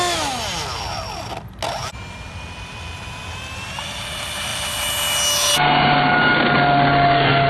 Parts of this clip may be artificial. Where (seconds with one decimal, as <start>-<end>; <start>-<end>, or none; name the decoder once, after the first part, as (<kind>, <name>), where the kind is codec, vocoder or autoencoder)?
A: none